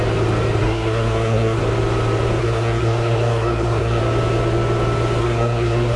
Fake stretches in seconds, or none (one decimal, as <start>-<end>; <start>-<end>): 0.6-1.6; 2.4-4.0; 5.2-6.0

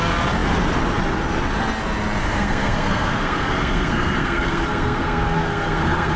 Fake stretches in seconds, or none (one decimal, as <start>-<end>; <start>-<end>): 2.2-6.2

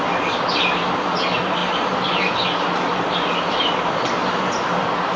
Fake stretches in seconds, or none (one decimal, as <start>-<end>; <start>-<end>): none

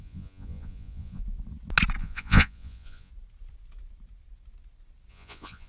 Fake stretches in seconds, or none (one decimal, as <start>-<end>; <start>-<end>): 0.0-1.2; 2.0-3.1; 5.1-5.7

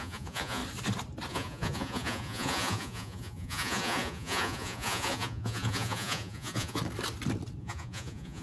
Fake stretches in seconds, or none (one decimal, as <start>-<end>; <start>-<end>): 0.0-0.6; 1.3-6.8; 7.6-8.4

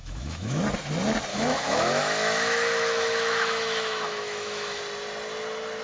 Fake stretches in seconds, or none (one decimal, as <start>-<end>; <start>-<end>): 0.0-0.6; 1.3-4.8

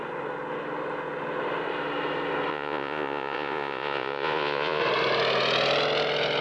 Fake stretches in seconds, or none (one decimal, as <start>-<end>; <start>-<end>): 2.5-4.8